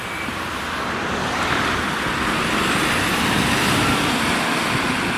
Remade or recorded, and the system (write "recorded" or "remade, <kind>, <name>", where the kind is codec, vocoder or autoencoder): recorded